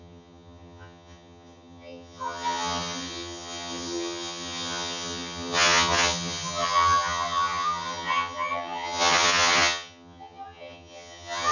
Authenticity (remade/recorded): remade